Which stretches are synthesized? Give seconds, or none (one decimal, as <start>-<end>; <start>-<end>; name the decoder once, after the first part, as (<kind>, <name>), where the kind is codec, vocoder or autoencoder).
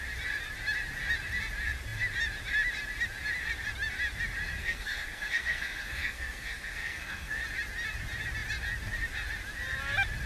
4.6-7.4 (codec, SNAC)